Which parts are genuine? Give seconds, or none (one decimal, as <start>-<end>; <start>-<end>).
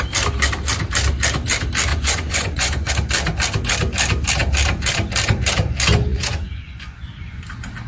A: 0.0-1.9; 2.9-6.1; 7.1-7.9